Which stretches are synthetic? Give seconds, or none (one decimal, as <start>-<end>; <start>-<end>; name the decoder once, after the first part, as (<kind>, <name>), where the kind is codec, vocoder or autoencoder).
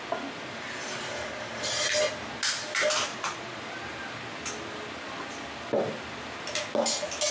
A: 3.1-3.6 (vocoder, Vocos)